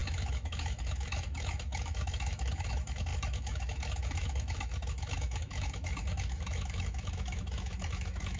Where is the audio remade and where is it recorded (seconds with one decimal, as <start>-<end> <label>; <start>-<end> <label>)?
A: 0.0-8.4 remade